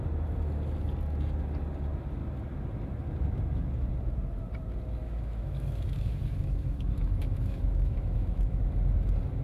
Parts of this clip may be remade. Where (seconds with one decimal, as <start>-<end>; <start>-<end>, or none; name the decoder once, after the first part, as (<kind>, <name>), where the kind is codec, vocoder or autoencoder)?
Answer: 5.0-8.6 (autoencoder, DAC-VAE)